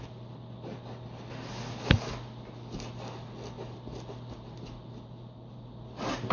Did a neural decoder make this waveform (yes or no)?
no